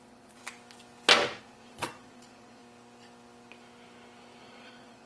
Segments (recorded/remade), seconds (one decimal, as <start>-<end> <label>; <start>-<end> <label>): 0.0-0.4 remade; 0.4-1.4 recorded; 1.4-2.6 remade; 2.6-4.4 recorded; 4.4-5.1 remade

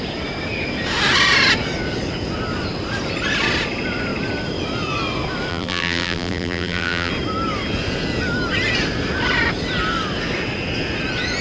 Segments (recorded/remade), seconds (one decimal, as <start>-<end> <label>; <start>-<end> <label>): 0.0-5.5 recorded; 5.5-7.1 remade; 7.1-11.4 recorded

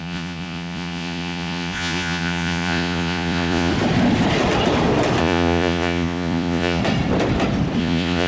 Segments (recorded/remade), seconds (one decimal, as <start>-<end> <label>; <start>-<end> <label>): 0.0-3.7 remade; 3.7-5.2 recorded; 5.2-6.8 remade; 6.8-7.8 recorded; 7.8-8.3 remade

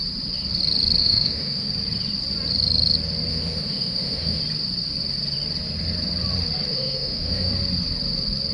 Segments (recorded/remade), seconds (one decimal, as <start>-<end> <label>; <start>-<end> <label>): 0.0-1.0 recorded; 1.0-1.7 remade; 1.7-3.3 recorded; 3.3-4.4 remade; 4.4-6.7 recorded; 6.7-7.5 remade; 7.5-8.5 recorded

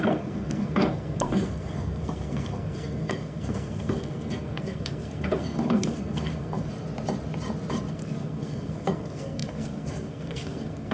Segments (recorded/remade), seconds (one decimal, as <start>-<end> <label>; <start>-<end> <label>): 0.0-6.7 remade; 6.7-7.9 recorded; 7.9-10.9 remade

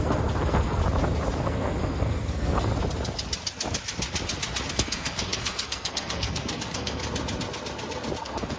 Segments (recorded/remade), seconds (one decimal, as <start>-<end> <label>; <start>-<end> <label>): 0.0-0.8 remade; 0.8-1.4 recorded; 1.4-2.7 remade; 2.7-4.7 recorded; 4.7-7.0 remade; 7.0-8.2 recorded; 8.2-8.6 remade

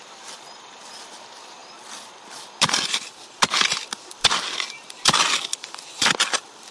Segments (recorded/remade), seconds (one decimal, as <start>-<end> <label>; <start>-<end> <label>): 0.0-6.7 recorded